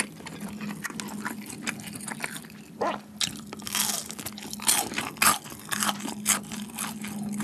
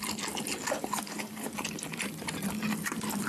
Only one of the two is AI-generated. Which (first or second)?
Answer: second